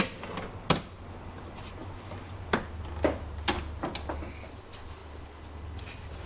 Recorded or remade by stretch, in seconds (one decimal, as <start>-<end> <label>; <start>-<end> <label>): 0.0-6.3 recorded